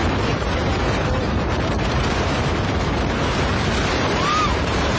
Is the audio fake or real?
fake